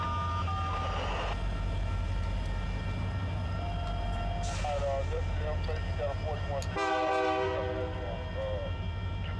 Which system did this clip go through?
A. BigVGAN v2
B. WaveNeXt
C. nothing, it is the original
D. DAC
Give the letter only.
C